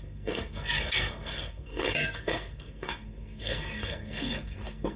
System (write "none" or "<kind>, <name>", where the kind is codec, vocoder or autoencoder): codec, SNAC